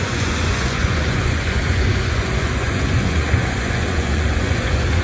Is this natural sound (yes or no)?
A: no